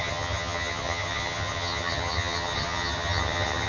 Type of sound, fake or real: fake